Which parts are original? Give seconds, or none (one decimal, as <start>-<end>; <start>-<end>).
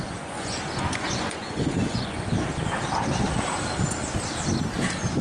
2.2-5.2